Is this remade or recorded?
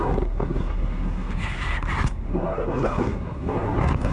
remade